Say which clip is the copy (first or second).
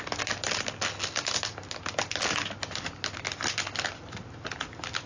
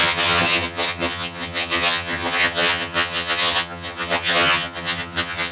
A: second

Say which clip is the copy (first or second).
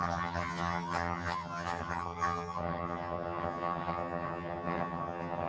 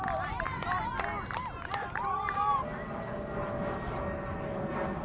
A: first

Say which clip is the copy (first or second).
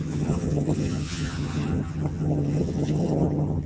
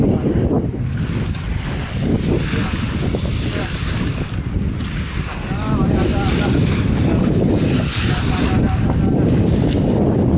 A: first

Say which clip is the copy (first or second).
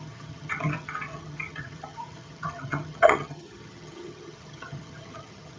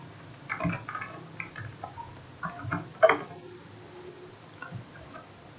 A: first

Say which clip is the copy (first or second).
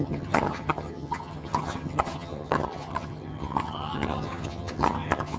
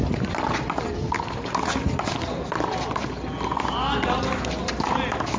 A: first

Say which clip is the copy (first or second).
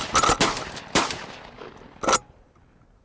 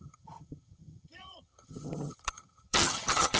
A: second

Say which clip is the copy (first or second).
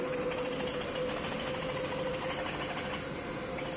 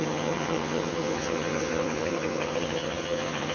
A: second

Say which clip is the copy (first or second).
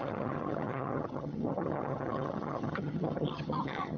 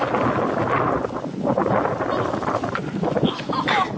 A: first